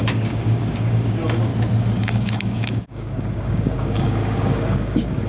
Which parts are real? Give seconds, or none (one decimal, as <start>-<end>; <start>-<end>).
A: 1.5-2.0